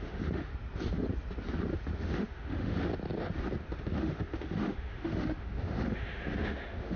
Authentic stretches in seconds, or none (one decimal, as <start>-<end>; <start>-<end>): 0.5-2.0; 2.9-3.6